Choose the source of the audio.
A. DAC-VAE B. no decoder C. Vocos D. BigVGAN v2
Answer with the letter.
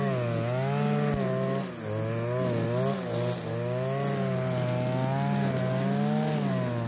B